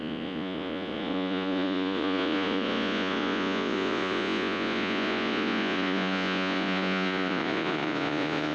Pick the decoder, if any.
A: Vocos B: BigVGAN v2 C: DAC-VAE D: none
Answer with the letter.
A